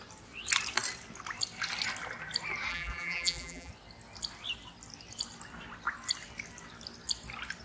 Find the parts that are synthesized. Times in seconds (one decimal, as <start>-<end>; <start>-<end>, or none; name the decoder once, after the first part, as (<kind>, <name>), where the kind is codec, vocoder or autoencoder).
2.7-3.7 (vocoder, BigVGAN v2)